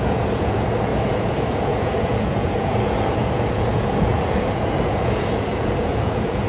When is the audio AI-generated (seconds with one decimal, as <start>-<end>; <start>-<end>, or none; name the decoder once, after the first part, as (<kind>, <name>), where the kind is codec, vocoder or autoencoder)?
0.0-6.5 (vocoder, Vocos)